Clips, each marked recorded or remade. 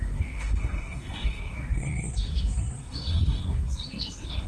remade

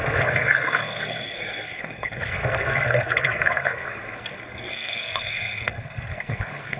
remade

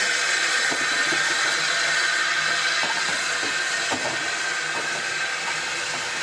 recorded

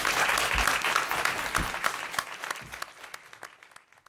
recorded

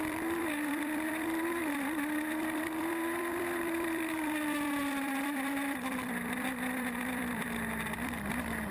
remade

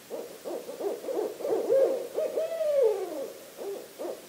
remade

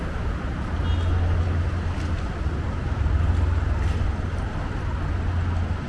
recorded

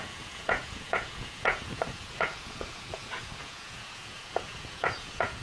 remade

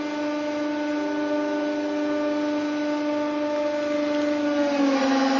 recorded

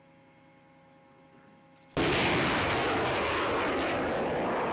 recorded